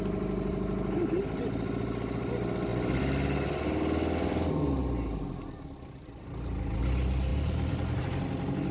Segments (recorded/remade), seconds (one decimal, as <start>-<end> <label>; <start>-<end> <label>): 0.0-7.3 recorded; 7.3-8.0 remade; 8.0-8.7 recorded